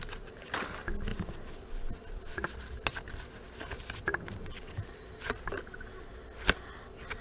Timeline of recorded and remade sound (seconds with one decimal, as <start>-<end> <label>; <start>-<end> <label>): 0.0-7.2 recorded